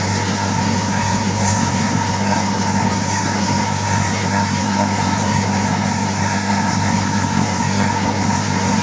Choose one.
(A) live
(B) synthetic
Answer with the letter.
B